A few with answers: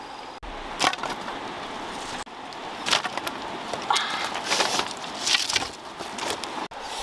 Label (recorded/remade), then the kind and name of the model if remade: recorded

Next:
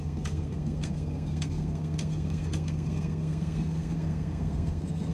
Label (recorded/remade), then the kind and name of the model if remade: remade, codec, SNAC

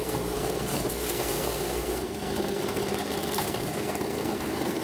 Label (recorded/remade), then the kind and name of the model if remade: remade, codec, SNAC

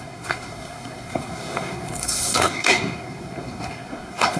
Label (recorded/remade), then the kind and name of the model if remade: remade, codec, SNAC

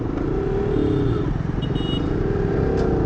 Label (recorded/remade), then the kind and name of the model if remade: recorded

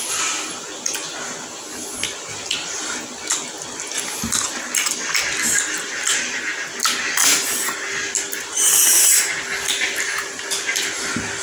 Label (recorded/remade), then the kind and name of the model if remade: recorded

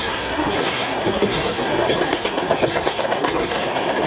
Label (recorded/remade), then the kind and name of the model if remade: remade, codec, SNAC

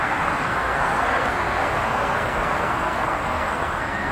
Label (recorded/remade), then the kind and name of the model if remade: remade, codec, SNAC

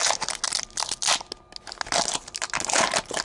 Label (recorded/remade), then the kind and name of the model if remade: recorded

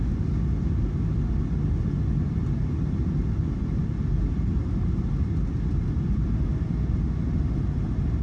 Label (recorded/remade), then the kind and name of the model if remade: recorded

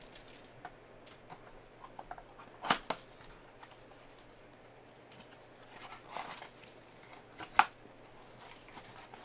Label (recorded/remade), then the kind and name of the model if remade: recorded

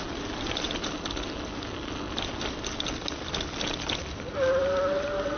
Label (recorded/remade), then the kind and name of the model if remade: recorded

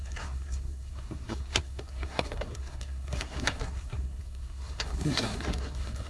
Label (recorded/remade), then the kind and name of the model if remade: remade, codec, SNAC